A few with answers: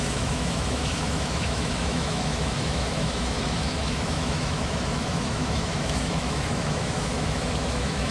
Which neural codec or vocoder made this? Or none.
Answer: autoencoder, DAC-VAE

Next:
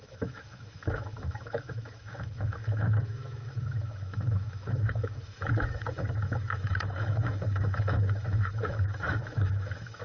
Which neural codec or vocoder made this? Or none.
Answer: autoencoder, DAC-VAE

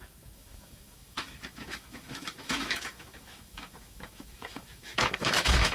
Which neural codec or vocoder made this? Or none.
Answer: autoencoder, DAC-VAE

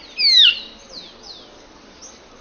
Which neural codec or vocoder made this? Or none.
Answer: none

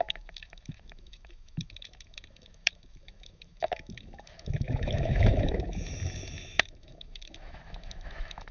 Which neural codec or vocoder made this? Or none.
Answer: autoencoder, DAC-VAE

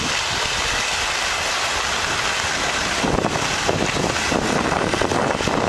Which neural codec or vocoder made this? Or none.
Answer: none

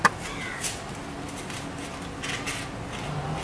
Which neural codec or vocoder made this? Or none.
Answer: none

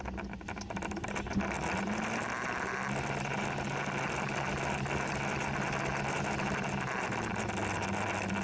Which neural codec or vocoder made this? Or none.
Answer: none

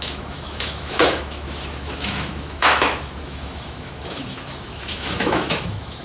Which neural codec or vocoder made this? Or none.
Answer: autoencoder, DAC-VAE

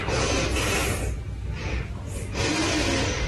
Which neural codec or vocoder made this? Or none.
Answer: none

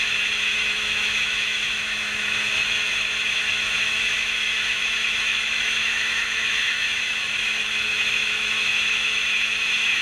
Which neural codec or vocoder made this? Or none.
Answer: autoencoder, DAC-VAE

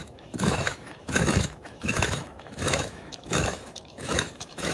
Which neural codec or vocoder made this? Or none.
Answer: autoencoder, DAC-VAE